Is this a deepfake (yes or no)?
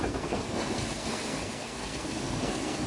yes